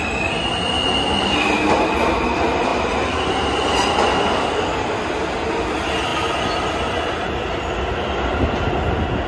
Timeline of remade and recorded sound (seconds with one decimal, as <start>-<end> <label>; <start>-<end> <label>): 0.0-4.1 recorded; 4.1-4.8 remade; 4.8-9.3 recorded